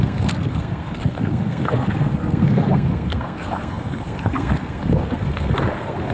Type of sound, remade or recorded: remade